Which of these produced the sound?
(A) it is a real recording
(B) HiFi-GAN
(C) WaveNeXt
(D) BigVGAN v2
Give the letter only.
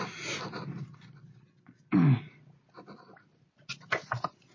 A